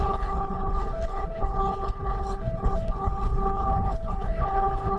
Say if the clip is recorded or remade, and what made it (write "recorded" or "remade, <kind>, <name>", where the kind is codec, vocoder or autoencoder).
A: remade, codec, HILCodec